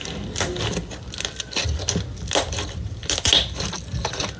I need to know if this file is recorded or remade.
recorded